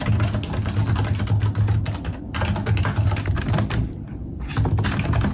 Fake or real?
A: real